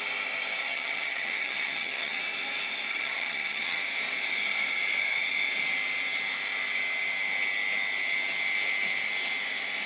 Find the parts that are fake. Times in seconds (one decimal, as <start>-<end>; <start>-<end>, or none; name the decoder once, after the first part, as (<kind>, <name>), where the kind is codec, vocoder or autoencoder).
0.6-2.2 (vocoder, HiFi-GAN); 2.9-3.8